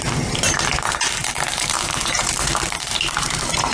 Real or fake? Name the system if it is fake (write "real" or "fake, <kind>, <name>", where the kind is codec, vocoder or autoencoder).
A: fake, vocoder, BigVGAN v2